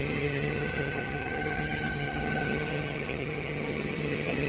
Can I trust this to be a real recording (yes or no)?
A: no